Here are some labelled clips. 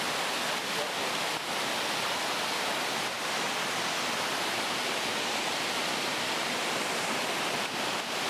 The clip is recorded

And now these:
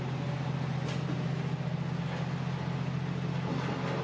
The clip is recorded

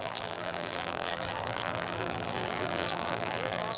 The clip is remade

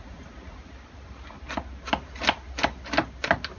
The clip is recorded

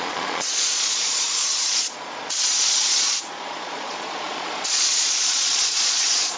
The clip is remade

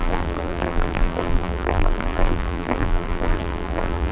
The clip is remade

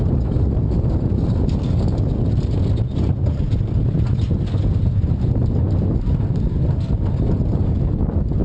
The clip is recorded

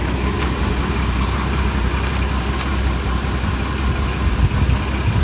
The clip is recorded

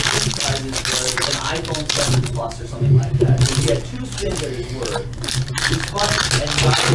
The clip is recorded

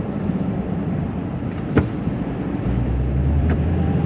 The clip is remade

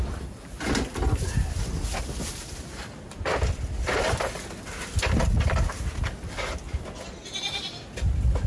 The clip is recorded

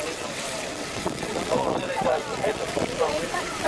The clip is remade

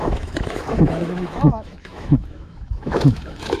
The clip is remade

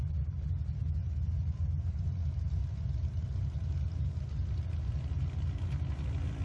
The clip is recorded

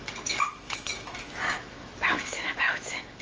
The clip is remade